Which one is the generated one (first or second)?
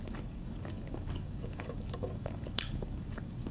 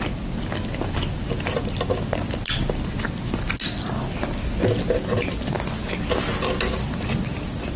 first